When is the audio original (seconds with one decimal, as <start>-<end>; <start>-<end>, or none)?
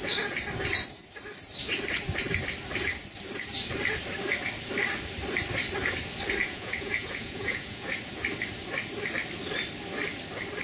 0.0-6.4; 8.0-10.6